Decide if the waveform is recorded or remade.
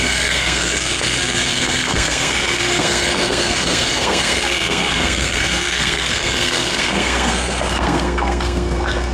remade